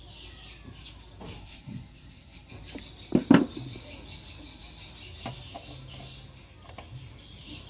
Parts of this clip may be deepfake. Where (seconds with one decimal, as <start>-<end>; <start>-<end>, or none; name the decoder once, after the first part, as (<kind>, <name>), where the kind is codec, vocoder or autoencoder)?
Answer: 1.4-2.5 (codec, SNAC)